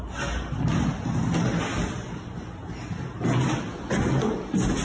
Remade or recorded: recorded